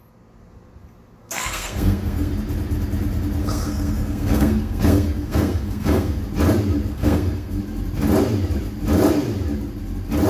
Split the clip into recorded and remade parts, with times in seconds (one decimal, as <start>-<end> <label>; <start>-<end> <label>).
0.0-1.2 recorded; 1.2-2.3 remade; 2.3-3.4 recorded; 3.4-6.2 remade; 6.2-6.9 recorded; 6.9-7.6 remade; 7.6-10.3 recorded